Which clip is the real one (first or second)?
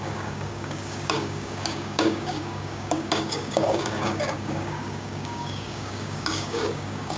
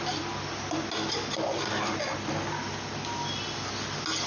second